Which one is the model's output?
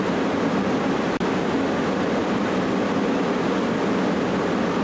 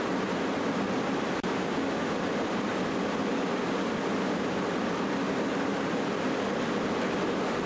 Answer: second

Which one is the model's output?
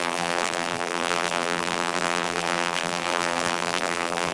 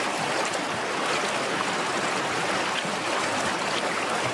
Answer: first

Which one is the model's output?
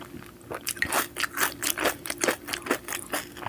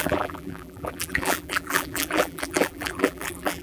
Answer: second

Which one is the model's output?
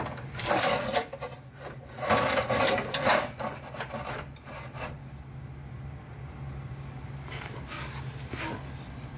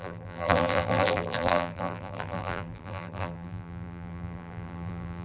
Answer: second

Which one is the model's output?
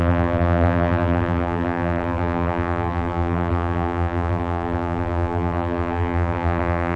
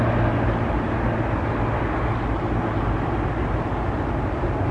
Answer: first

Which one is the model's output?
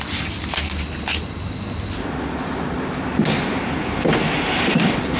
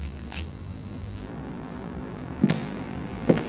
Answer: second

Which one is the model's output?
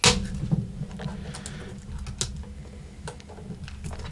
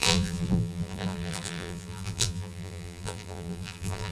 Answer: second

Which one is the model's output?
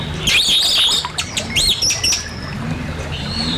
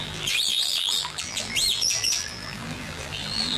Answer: second